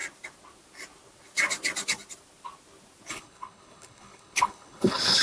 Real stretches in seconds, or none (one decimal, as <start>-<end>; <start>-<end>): 0.0-3.1